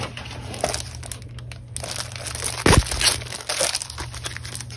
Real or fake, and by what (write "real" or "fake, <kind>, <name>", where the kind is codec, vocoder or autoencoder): real